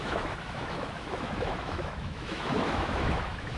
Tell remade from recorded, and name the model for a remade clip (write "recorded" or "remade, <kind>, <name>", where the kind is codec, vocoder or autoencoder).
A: remade, autoencoder, DAC-VAE